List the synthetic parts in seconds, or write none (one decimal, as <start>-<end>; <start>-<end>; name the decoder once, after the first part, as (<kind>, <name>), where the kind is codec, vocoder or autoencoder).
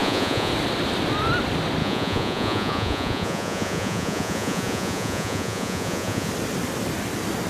0.0-0.5 (vocoder, Vocos); 1.8-6.3